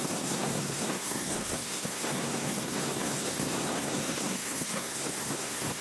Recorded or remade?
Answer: remade